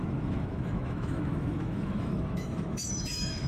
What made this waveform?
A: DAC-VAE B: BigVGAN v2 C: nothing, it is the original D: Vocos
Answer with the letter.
A